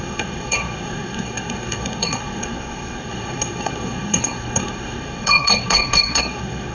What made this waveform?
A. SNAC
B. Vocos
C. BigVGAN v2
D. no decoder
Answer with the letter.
A